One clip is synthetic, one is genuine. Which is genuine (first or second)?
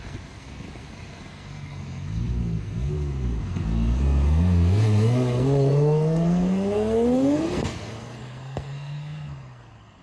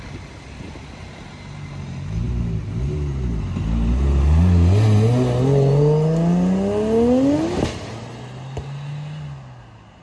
second